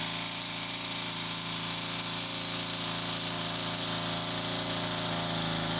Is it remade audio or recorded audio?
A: recorded